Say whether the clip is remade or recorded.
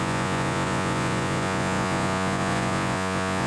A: remade